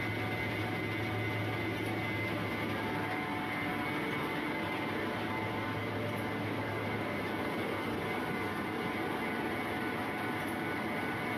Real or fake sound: real